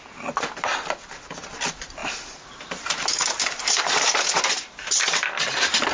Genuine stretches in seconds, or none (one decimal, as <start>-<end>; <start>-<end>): 0.0-2.0; 4.4-5.9